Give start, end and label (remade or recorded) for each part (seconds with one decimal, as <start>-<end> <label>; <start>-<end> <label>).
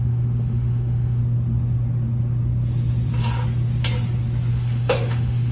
0.0-1.2 remade; 1.2-4.5 recorded; 4.5-5.5 remade